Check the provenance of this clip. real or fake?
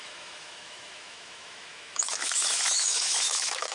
fake